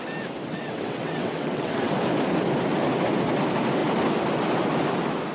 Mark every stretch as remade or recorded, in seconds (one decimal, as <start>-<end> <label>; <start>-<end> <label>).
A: 0.0-0.5 recorded; 0.5-1.9 remade; 1.9-5.3 recorded